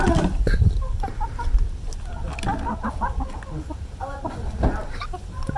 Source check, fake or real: real